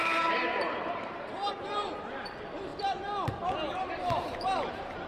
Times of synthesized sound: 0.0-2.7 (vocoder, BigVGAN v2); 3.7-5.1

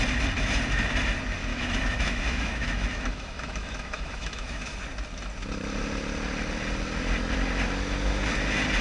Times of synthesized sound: 1.5-4.8 (autoencoder, DAC-VAE)

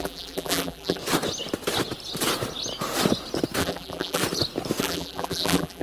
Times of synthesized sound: 0.0-1.0 (vocoder, BigVGAN v2); 3.6-4.2; 4.8-5.8

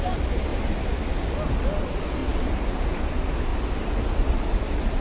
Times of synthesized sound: none

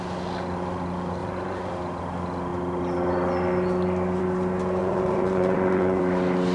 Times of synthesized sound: 1.2-1.7 (vocoder, Vocos); 4.8-6.0

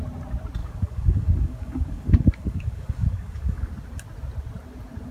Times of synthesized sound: 0.6-3.7 (codec, DAC)

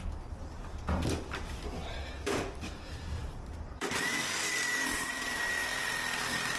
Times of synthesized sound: 3.2-3.8 (vocoder, BigVGAN v2); 4.7-5.9

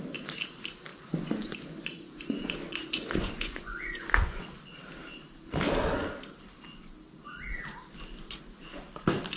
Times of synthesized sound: 0.9-4.4 (vocoder, Vocos)